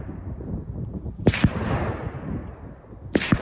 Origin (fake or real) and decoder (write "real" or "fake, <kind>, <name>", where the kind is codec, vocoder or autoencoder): real